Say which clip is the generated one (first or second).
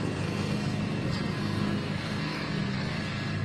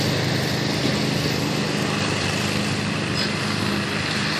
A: first